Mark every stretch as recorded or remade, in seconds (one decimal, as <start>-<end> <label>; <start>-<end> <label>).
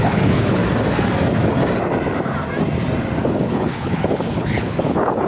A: 0.0-0.6 remade; 0.6-3.2 recorded; 3.2-5.3 remade